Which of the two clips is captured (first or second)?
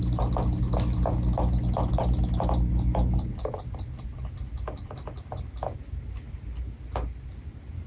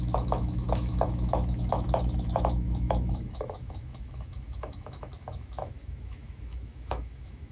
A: first